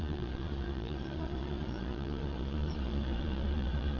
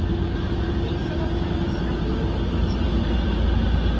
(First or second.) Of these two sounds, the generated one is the first